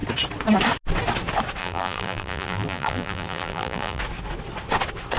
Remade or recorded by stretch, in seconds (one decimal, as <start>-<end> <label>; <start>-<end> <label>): 0.0-1.6 recorded; 1.6-4.0 remade; 4.0-5.2 recorded